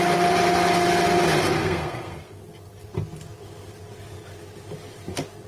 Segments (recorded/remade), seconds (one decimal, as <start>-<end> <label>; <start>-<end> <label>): 0.0-1.6 recorded; 1.6-2.4 remade; 2.4-5.5 recorded